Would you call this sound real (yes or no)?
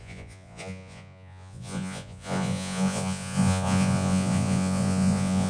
no